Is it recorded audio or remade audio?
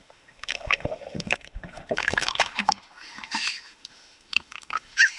remade